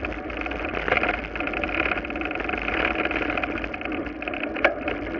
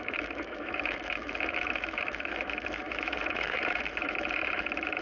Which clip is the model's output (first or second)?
second